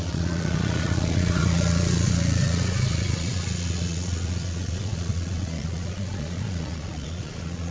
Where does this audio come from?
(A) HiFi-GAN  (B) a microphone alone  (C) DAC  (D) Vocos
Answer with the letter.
D